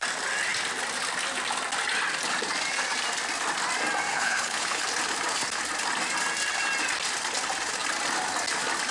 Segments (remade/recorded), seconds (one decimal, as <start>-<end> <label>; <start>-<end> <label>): 0.0-4.1 recorded; 4.1-4.8 remade; 4.8-8.9 recorded